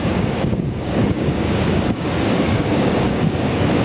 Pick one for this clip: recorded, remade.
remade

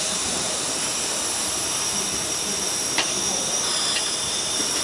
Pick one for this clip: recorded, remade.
remade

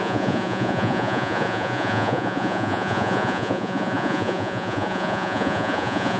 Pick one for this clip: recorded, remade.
remade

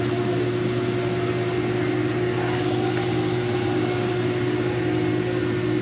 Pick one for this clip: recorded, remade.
recorded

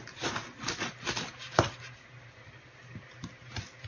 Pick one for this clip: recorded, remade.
recorded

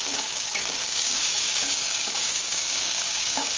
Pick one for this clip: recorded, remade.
remade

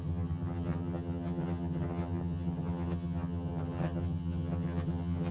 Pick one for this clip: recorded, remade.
remade